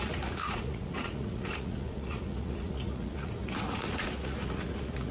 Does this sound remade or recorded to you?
remade